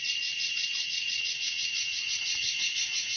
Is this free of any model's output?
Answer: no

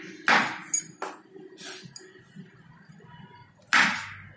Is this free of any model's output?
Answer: yes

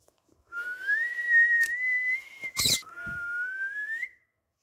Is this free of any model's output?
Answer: no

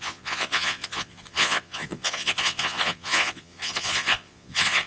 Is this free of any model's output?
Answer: no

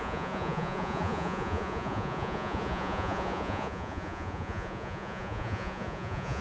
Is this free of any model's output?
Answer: no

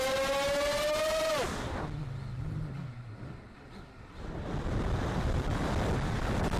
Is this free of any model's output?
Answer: yes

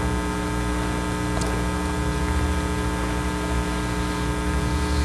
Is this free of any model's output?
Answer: yes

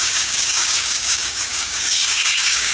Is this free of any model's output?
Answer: no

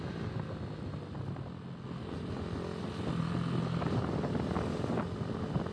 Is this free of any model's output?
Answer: yes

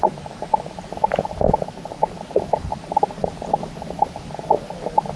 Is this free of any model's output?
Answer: yes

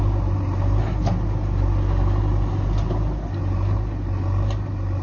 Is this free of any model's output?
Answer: yes